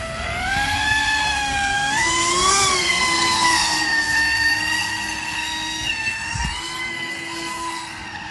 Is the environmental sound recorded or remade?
remade